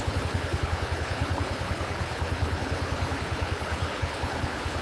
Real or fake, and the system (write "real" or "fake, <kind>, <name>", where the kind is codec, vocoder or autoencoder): fake, codec, HILCodec